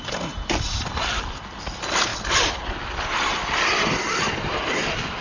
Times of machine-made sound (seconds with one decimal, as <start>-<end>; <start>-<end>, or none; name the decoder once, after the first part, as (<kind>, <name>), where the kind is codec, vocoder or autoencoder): none